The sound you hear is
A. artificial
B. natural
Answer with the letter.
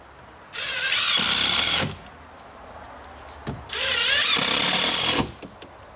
B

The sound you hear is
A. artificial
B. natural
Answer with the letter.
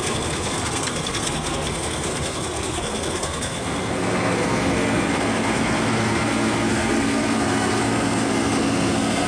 A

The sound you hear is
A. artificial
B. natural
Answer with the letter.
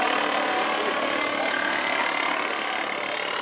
B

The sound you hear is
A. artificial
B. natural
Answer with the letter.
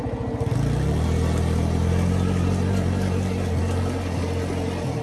B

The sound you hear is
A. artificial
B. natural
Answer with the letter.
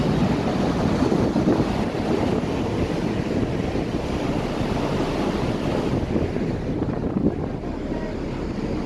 B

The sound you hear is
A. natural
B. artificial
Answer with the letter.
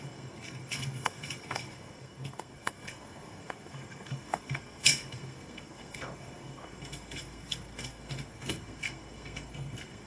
B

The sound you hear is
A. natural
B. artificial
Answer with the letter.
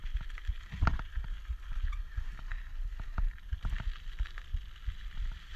A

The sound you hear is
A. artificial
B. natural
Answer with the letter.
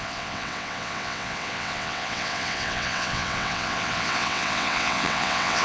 A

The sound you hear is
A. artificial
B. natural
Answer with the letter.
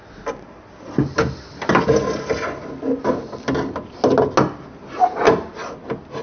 B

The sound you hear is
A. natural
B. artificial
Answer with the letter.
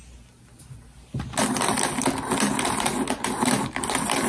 A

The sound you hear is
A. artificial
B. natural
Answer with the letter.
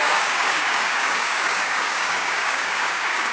A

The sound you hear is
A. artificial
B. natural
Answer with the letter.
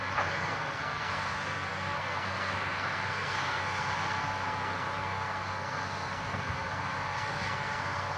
A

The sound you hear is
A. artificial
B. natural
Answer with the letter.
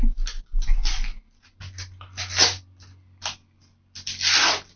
B